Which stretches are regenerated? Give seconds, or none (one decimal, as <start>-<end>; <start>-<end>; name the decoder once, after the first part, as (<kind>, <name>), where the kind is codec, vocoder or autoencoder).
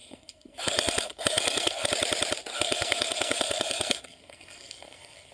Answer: 0.0-1.9 (codec, SNAC); 2.5-5.3